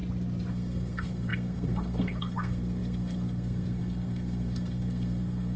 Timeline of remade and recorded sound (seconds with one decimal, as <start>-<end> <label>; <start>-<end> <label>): 0.0-0.5 recorded; 0.5-5.6 remade